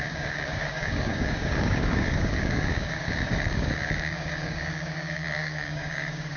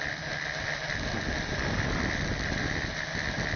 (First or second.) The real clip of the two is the second